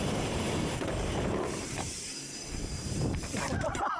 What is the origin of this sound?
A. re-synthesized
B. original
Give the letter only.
A